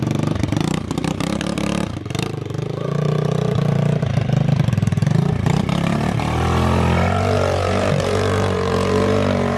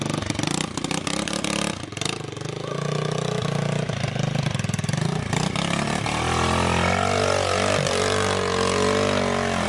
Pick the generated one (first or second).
first